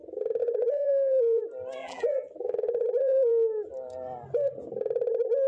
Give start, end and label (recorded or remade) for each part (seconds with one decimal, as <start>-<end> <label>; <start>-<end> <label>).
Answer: 0.0-0.4 recorded; 0.4-1.4 remade; 1.4-1.8 recorded; 1.8-3.3 remade; 3.3-5.5 recorded